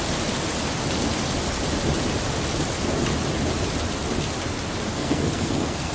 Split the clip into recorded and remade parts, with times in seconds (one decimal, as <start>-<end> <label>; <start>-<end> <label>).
0.0-4.9 recorded; 4.9-5.9 remade